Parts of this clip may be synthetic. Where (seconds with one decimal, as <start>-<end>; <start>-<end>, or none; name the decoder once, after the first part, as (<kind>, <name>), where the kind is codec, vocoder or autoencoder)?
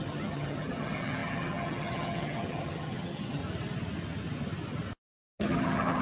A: 0.0-3.4 (vocoder, HiFi-GAN); 5.4-6.0